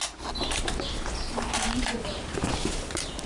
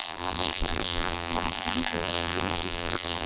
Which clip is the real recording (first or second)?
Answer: first